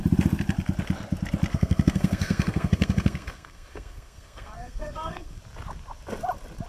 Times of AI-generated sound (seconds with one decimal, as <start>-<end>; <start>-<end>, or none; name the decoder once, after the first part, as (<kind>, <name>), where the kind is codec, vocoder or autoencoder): 1.5-5.4 (codec, SNAC)